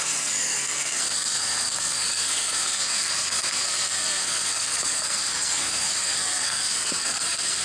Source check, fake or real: fake